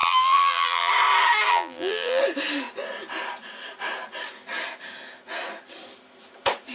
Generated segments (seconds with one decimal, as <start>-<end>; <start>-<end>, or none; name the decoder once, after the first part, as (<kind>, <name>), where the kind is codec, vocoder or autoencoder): 0.0-0.9 (vocoder, BigVGAN v2); 1.5-2.2